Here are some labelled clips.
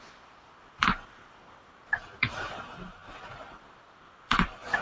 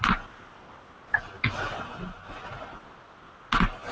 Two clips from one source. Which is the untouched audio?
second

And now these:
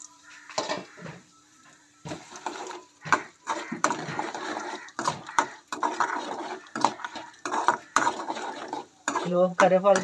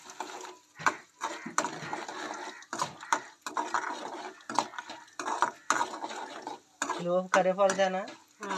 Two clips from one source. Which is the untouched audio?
second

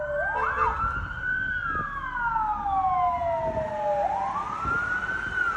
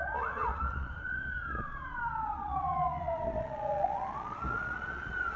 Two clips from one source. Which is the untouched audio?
first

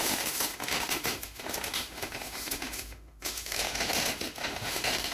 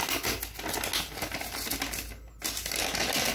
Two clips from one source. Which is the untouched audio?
second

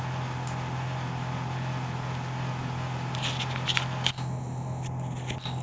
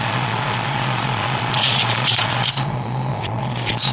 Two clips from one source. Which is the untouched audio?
first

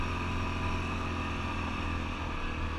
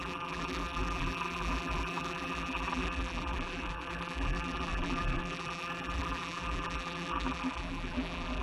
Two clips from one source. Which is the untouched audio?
first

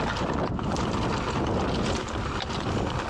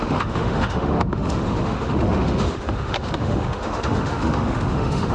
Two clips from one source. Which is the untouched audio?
first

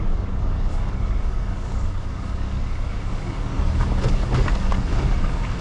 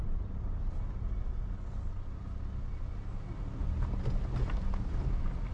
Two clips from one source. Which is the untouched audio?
second